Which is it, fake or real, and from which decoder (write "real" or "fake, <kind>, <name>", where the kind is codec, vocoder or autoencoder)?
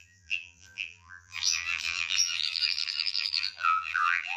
fake, vocoder, BigVGAN v2